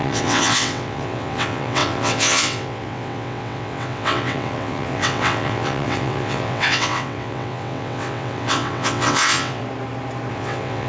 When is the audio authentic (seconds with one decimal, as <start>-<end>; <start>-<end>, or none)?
9.6-10.3